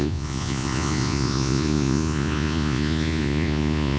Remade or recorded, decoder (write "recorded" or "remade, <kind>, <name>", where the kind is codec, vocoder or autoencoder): remade, vocoder, Vocos